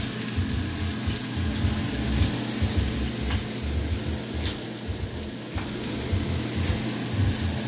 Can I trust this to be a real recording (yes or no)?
yes